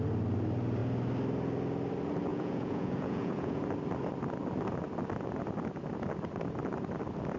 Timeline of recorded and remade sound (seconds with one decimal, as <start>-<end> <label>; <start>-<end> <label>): 0.0-2.3 recorded; 2.3-3.6 remade; 3.6-7.4 recorded